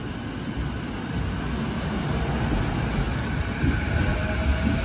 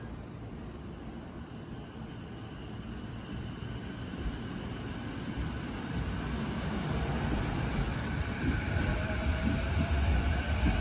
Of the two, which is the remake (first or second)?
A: second